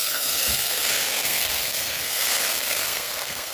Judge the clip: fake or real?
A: fake